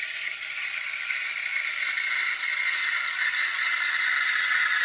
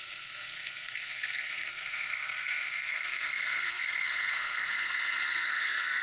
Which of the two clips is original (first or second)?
first